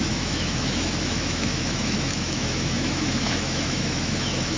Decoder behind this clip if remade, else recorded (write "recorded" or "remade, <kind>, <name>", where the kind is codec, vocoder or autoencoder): remade, autoencoder, DAC-VAE